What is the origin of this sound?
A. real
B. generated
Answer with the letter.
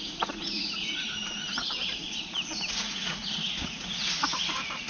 B